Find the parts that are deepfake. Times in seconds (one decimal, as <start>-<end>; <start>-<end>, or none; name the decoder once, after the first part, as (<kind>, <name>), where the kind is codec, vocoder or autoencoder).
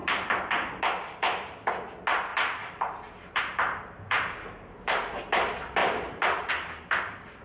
0.0-1.7 (vocoder, BigVGAN v2); 2.3-5.2; 5.8-6.5